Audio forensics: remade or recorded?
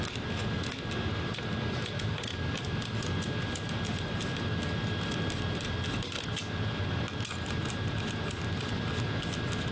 recorded